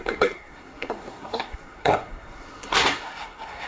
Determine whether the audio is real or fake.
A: fake